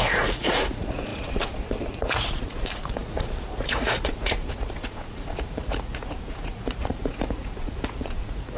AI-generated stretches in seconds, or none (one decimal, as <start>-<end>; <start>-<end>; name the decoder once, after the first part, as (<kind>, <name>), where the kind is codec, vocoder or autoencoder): 0.0-8.6 (vocoder, Vocos)